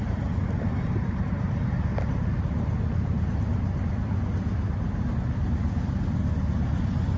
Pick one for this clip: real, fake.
real